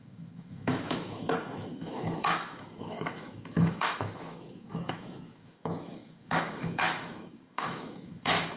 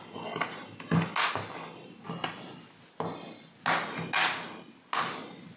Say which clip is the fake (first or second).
first